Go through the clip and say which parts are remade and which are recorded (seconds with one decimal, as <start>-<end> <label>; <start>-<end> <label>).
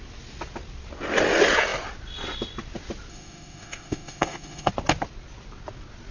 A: 0.0-3.1 recorded; 3.1-4.7 remade; 4.7-6.1 recorded